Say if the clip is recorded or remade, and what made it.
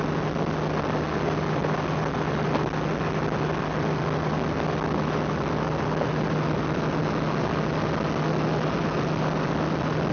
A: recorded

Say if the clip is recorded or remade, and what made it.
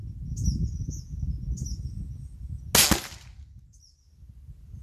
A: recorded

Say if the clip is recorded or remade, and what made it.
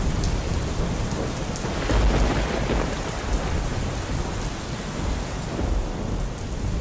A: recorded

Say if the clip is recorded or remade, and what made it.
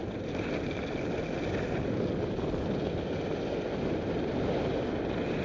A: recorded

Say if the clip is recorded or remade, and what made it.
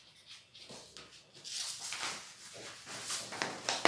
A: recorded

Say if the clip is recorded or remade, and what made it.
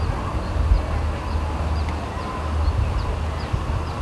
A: recorded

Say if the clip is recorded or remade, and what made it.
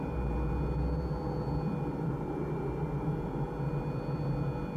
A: recorded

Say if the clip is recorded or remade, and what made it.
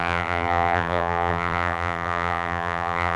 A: remade, vocoder, BigVGAN v2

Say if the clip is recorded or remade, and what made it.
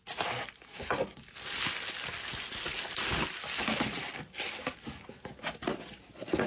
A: recorded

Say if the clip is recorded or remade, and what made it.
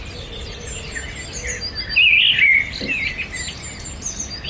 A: recorded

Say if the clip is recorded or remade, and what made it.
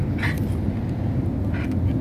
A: recorded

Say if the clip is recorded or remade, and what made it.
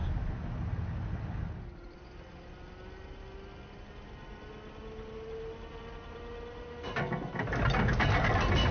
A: recorded